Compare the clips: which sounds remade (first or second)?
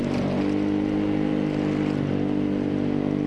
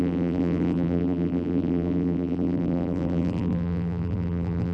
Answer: second